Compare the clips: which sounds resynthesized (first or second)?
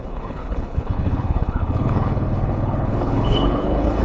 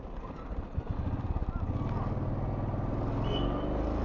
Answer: first